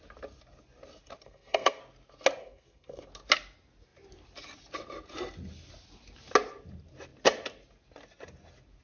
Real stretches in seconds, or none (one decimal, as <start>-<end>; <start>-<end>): 0.0-1.2; 1.8-2.4; 3.0-8.8